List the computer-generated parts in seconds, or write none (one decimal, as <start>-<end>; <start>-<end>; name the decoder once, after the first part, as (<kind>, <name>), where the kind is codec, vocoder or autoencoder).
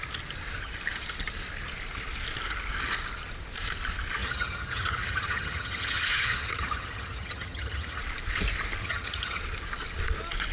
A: 4.2-8.0 (vocoder, HiFi-GAN); 8.8-9.4